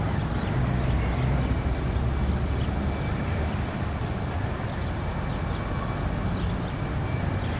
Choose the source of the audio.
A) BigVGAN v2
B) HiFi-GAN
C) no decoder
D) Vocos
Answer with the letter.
C